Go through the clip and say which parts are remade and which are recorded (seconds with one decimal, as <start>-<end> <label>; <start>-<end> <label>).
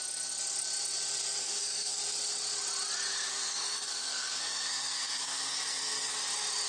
0.0-1.4 recorded; 1.4-2.0 remade; 2.0-3.3 recorded; 3.3-6.2 remade; 6.2-6.7 recorded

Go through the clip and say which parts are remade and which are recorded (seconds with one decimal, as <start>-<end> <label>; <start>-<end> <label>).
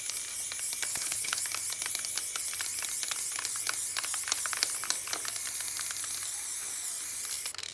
0.0-0.9 recorded; 0.9-1.4 remade; 1.4-7.7 recorded